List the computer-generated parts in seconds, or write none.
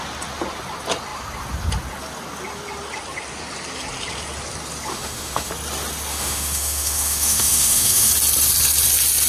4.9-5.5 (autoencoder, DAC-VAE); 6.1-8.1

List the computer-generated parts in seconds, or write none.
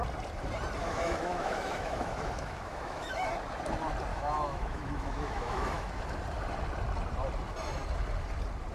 0.8-3.3 (autoencoder, DAC-VAE); 4.1-6.0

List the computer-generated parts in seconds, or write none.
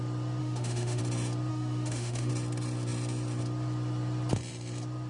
0.4-1.0 (autoencoder, DAC-VAE); 1.5-2.3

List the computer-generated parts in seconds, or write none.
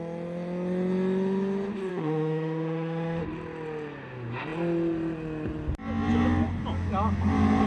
1.9-3.2 (autoencoder, DAC-VAE)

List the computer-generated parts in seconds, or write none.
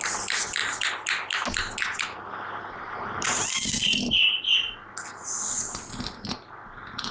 none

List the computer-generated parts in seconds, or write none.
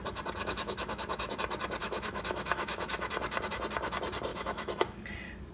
0.4-1.3 (autoencoder, DAC-VAE); 1.8-3.1; 4.3-5.0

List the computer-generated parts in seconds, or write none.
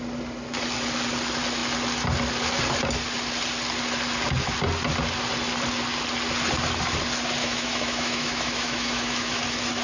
7.4-9.4 (autoencoder, DAC-VAE)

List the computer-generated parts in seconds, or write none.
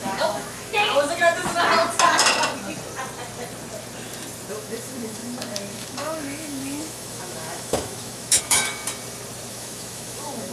0.0-0.7 (autoencoder, DAC-VAE); 4.5-8.8; 9.5-10.5